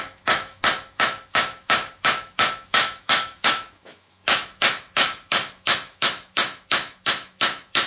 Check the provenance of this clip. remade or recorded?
remade